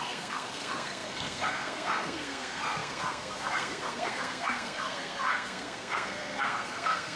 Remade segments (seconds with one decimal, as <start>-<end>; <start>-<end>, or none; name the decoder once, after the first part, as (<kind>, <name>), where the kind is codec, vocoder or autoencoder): 0.0-7.2 (codec, SNAC)